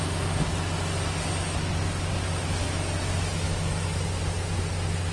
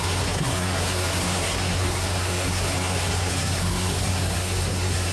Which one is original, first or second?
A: first